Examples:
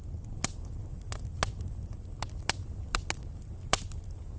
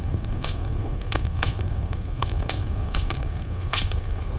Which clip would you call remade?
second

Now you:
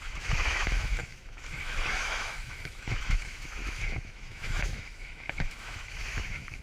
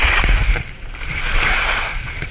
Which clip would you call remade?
first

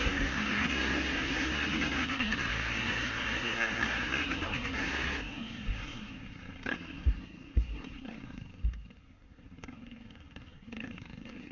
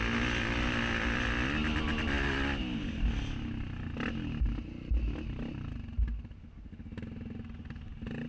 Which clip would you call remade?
first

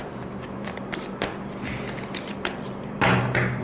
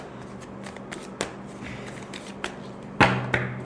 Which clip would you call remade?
first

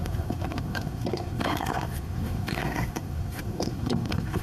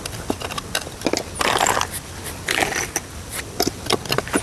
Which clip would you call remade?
first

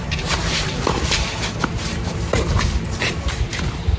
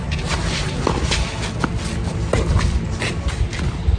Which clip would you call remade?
first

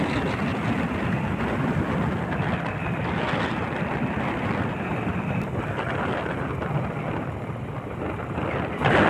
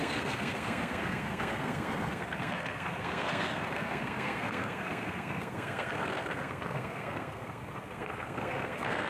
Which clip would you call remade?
second